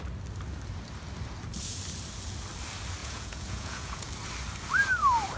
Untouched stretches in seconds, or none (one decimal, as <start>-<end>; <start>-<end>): 0.0-3.0; 4.1-5.4